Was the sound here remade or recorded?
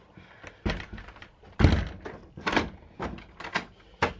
recorded